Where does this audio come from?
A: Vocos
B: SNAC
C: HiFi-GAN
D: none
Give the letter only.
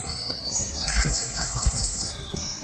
B